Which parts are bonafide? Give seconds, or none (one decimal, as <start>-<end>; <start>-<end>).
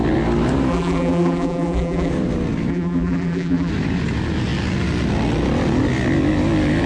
0.0-0.7; 2.1-2.7; 3.7-6.9